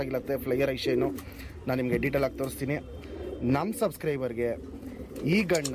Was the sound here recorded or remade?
recorded